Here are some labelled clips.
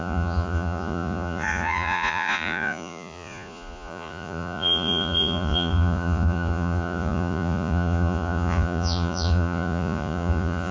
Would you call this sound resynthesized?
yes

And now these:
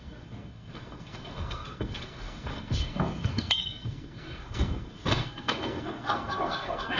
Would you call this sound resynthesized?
yes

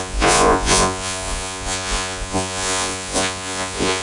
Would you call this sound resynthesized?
yes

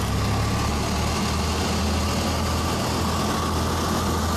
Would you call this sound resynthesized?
no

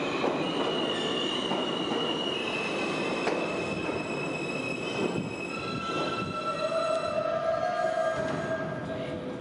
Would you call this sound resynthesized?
no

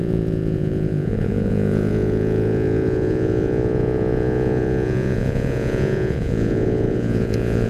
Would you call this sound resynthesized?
yes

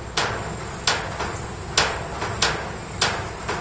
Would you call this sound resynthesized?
no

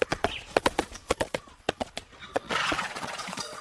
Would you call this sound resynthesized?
yes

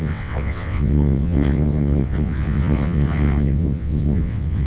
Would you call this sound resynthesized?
yes